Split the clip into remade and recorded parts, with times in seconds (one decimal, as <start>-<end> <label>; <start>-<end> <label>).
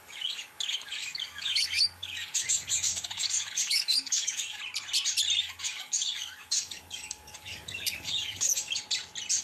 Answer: 0.0-4.6 remade; 4.6-5.4 recorded; 5.4-8.8 remade; 8.8-9.4 recorded